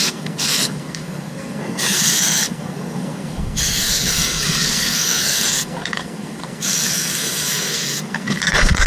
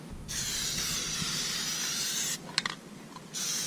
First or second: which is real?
second